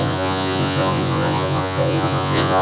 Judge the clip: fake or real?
fake